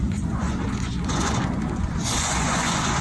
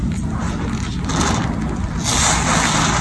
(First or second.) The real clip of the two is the second